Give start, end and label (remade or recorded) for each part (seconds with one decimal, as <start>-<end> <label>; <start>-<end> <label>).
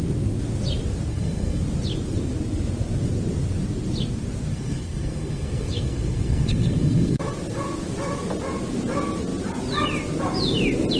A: 0.0-1.1 recorded; 1.1-1.6 remade; 1.6-4.5 recorded; 4.5-7.2 remade; 7.2-11.0 recorded